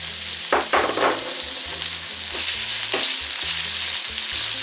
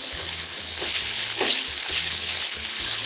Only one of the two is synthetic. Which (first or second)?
second